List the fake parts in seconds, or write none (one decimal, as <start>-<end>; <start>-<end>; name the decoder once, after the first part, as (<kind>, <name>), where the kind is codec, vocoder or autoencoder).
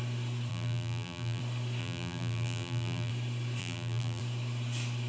0.5-1.4 (vocoder, BigVGAN v2); 1.8-3.1; 3.6-4.2